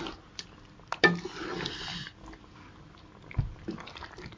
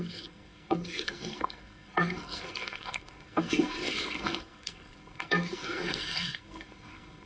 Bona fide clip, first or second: first